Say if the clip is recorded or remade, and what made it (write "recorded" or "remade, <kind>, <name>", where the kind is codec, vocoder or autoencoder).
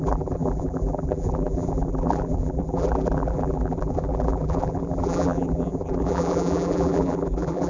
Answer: remade, vocoder, BigVGAN v2